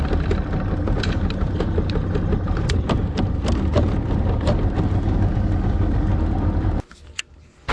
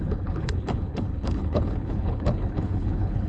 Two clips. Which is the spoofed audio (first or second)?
second